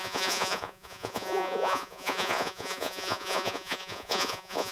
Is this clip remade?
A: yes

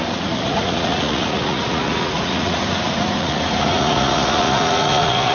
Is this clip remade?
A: yes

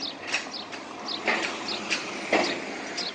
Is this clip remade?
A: no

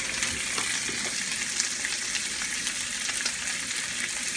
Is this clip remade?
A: no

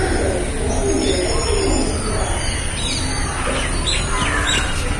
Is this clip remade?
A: no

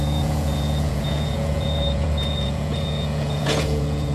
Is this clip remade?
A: yes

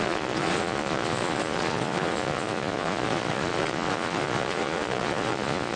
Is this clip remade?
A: yes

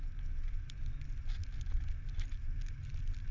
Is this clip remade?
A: no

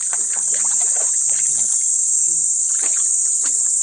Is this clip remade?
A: yes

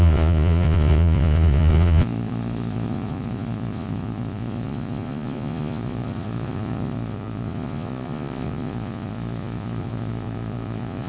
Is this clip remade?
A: yes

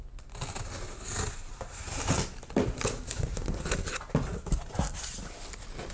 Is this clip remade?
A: no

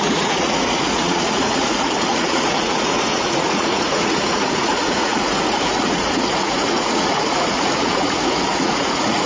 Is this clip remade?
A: yes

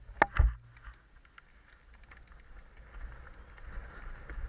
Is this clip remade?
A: no